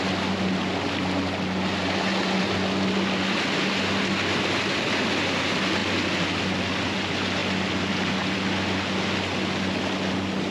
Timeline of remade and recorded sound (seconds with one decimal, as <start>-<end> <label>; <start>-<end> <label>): 0.0-10.5 recorded